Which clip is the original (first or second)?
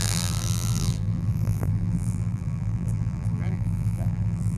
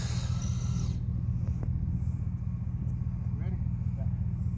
second